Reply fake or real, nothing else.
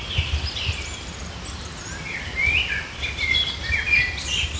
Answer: real